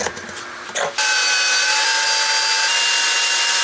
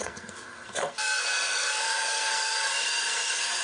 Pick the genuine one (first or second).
first